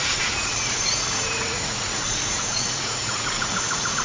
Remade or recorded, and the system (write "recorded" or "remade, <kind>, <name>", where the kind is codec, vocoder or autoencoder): remade, vocoder, Vocos